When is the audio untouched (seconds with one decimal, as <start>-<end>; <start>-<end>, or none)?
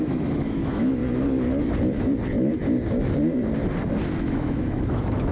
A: 1.0-4.2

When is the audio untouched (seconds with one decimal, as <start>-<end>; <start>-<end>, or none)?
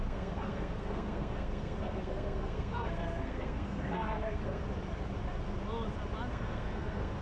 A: 4.6-6.3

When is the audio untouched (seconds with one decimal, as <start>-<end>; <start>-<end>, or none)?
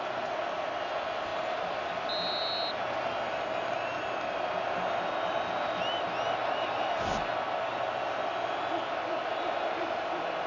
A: 0.0-10.5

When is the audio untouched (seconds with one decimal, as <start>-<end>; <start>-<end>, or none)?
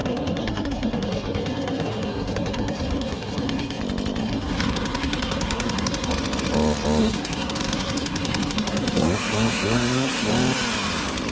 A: 3.8-4.2; 6.1-7.0; 10.3-11.3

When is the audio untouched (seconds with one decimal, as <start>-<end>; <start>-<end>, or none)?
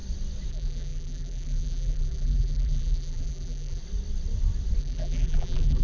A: 0.0-0.5; 3.8-4.8